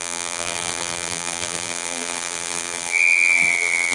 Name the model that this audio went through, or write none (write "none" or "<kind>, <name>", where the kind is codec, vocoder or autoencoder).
vocoder, BigVGAN v2